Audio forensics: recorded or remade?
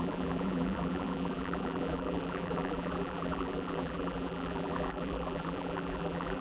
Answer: remade